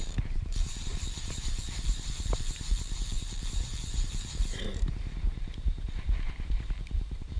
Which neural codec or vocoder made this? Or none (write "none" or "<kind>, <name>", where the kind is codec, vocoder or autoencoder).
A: vocoder, BigVGAN v2